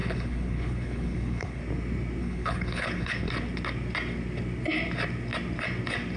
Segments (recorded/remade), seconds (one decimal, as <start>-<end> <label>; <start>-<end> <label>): 0.0-1.6 remade; 1.6-2.2 recorded; 2.2-3.3 remade; 3.3-6.2 recorded